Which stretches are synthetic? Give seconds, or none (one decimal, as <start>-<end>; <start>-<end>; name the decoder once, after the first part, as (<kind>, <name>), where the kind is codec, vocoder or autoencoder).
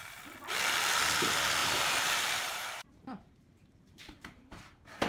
1.6-5.1 (vocoder, BigVGAN v2)